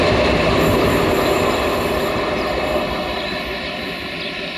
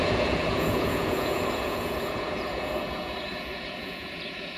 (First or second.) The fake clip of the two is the second